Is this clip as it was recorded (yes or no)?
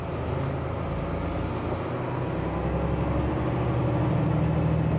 yes